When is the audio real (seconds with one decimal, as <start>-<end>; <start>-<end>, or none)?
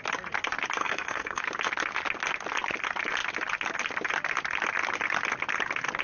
0.0-0.8; 1.4-6.0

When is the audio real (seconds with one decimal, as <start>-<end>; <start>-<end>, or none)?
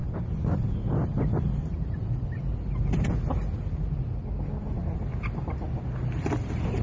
0.0-6.8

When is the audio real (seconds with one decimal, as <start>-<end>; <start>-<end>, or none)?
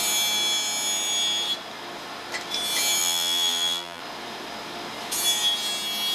0.0-3.0; 4.0-6.1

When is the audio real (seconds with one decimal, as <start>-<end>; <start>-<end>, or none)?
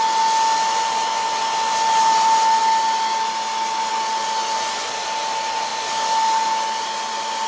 0.0-7.5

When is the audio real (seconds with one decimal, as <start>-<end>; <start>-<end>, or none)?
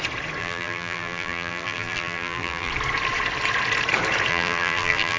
0.0-0.4; 2.7-4.3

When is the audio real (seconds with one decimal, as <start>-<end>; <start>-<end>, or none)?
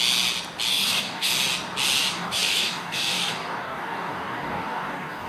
0.0-0.7; 1.3-2.1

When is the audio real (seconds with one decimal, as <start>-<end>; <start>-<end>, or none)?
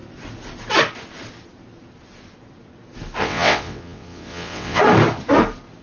0.0-3.2; 4.8-5.8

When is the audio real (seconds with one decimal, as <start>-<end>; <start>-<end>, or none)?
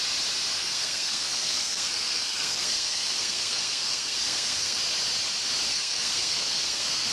0.0-0.6; 4.8-5.7